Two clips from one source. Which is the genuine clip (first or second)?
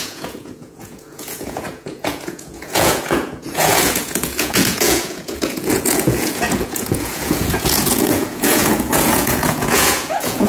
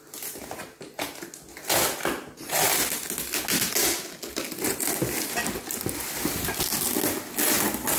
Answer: second